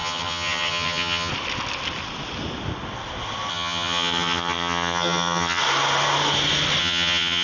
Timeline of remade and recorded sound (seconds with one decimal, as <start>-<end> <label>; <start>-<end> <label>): 0.0-1.3 remade; 1.3-3.5 recorded; 3.5-5.6 remade; 5.6-6.8 recorded; 6.8-7.4 remade